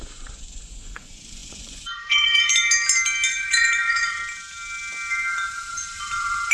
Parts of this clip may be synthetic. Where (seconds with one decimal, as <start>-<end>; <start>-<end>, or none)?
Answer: 0.0-2.5; 3.3-4.2; 5.3-6.5

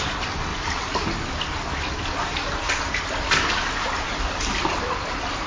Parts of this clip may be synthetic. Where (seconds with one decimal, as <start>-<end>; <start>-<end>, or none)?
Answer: none

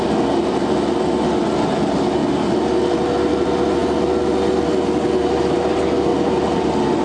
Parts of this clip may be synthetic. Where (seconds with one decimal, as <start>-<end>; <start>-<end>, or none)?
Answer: none

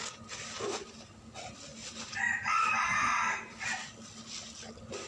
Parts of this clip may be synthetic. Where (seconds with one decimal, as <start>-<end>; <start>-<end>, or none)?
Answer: 0.0-5.1